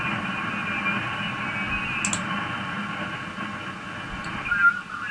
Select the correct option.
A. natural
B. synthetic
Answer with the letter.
A